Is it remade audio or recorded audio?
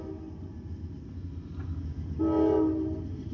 recorded